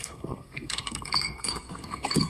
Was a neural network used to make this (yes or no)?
yes